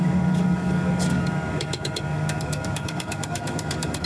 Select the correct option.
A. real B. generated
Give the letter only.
B